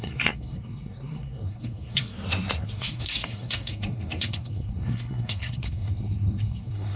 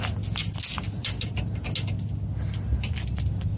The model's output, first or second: first